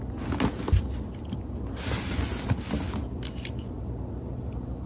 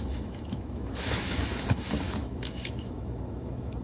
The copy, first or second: second